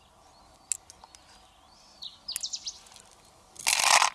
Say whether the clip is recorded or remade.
recorded